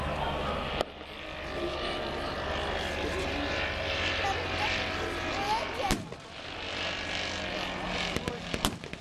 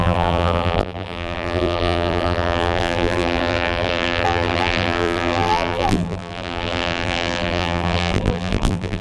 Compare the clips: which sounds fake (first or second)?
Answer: second